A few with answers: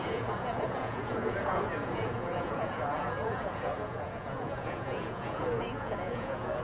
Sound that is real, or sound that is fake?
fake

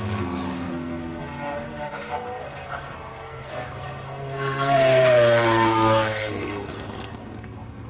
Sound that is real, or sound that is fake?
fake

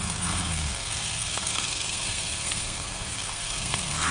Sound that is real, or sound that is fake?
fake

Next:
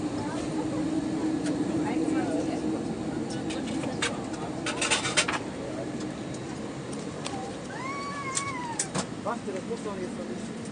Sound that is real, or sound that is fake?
real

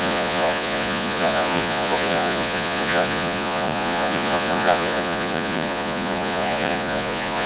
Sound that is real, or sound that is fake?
fake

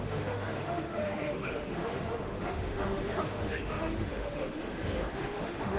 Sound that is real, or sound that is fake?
fake